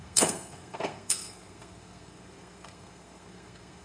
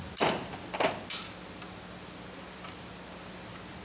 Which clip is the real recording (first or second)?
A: second